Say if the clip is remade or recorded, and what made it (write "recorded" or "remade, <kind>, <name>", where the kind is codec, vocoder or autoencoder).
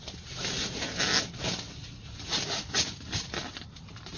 recorded